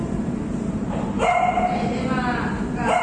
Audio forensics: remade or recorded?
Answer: remade